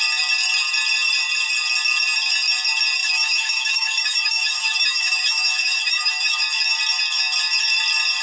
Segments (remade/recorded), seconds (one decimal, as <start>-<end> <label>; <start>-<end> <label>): 0.0-3.0 recorded; 3.0-6.4 remade; 6.4-8.2 recorded